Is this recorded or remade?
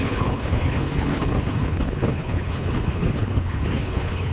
remade